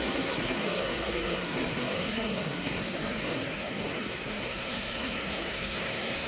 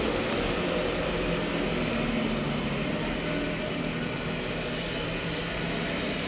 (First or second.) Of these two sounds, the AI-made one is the first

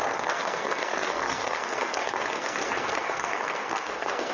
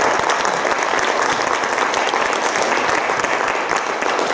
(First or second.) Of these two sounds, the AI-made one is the first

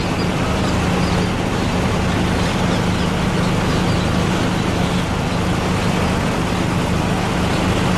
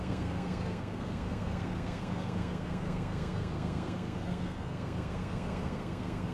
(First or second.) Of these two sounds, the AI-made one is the second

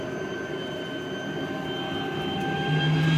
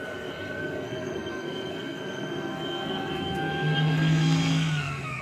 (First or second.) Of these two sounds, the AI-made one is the second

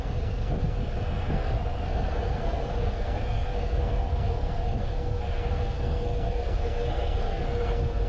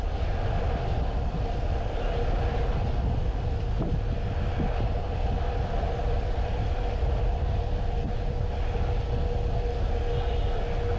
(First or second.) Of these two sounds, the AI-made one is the first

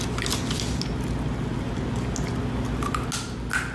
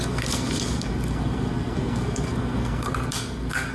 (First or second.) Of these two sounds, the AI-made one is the second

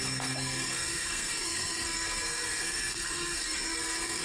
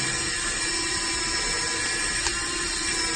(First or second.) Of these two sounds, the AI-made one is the first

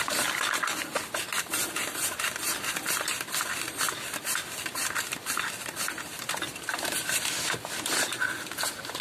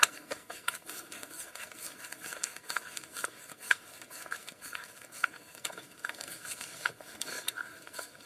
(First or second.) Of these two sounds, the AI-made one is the second